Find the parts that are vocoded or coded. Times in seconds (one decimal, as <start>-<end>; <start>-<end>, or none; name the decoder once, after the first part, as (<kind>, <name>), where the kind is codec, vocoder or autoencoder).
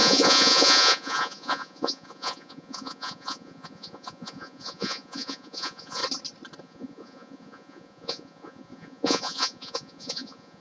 0.0-6.0 (vocoder, Vocos); 6.6-10.6